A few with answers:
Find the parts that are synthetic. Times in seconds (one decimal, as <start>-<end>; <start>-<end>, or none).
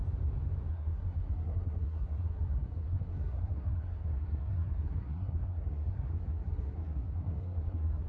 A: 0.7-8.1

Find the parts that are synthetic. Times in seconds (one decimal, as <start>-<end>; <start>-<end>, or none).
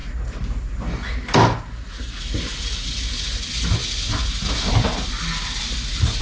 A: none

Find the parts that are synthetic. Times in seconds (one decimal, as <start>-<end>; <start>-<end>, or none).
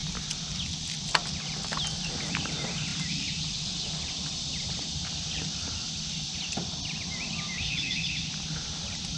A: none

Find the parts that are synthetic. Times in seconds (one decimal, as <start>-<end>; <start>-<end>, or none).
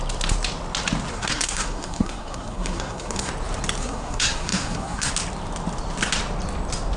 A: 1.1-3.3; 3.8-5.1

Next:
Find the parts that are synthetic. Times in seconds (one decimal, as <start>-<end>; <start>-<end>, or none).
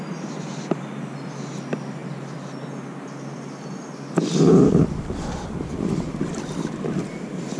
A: none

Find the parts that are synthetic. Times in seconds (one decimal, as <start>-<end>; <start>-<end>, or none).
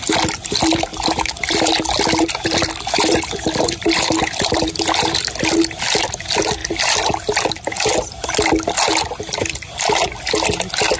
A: none